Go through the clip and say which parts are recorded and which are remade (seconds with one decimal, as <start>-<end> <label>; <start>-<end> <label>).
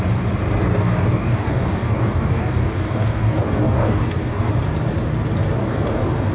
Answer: 0.0-0.7 recorded; 0.7-4.5 remade; 4.5-5.6 recorded; 5.6-6.3 remade